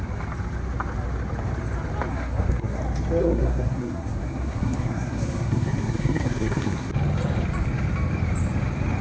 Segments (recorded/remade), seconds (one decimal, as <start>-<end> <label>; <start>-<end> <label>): 0.0-2.1 recorded; 2.1-2.8 remade; 2.8-3.2 recorded; 3.2-6.9 remade; 6.9-9.0 recorded